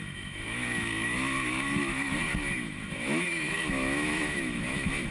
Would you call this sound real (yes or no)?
no